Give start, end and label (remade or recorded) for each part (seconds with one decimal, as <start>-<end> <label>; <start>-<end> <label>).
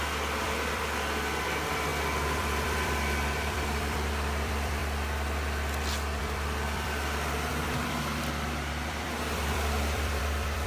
0.0-1.9 remade; 1.9-2.4 recorded; 2.4-4.8 remade; 4.8-6.2 recorded; 6.2-10.7 remade